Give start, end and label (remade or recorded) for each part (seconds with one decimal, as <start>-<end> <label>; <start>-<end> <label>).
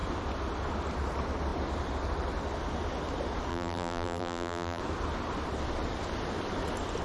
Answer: 0.0-3.5 recorded; 3.5-4.8 remade; 4.8-7.0 recorded